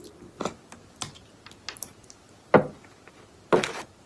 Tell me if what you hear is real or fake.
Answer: real